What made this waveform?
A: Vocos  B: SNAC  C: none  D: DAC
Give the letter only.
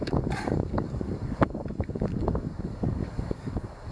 D